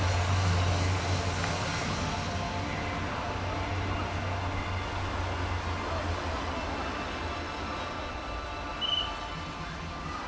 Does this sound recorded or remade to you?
recorded